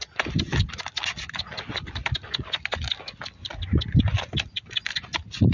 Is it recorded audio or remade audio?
recorded